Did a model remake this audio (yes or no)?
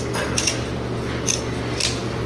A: no